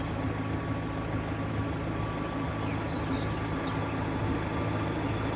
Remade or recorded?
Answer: recorded